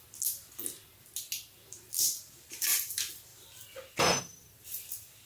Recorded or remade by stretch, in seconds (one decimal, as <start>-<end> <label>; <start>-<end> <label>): 0.0-5.3 recorded